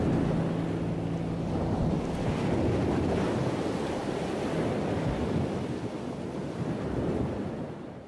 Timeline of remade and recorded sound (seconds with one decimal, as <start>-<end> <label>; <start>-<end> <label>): 0.0-8.1 recorded

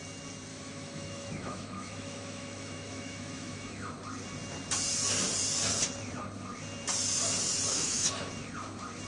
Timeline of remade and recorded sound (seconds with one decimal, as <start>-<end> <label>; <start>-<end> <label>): 0.0-0.5 recorded; 0.5-3.9 remade; 3.9-7.7 recorded; 7.7-8.3 remade; 8.3-9.1 recorded

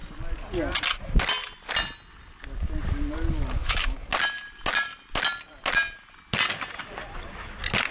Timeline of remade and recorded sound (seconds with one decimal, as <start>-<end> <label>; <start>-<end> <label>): 0.0-3.6 recorded; 3.6-4.1 remade; 4.1-7.9 recorded

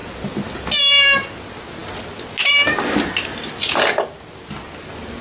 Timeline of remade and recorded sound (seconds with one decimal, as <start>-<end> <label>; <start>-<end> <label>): 0.0-5.2 recorded

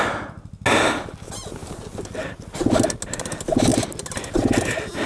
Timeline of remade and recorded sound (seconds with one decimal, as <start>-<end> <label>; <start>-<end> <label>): 0.0-5.1 recorded

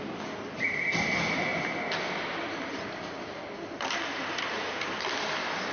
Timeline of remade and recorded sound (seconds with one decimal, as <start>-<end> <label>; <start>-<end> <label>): 0.0-5.7 recorded

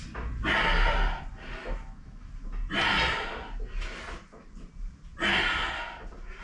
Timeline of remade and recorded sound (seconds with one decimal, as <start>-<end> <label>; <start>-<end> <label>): 0.0-1.6 recorded; 1.6-2.3 remade; 2.3-6.4 recorded

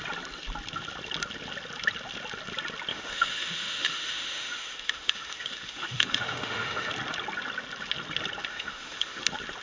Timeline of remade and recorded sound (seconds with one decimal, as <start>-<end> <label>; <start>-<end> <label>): 0.0-2.9 recorded; 2.9-6.9 remade; 6.9-8.5 recorded; 8.5-9.2 remade; 9.2-9.6 recorded